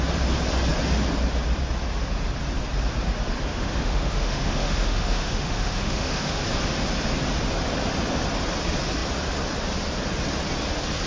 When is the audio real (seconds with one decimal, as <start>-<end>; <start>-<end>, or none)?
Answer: 0.0-3.5; 6.4-11.1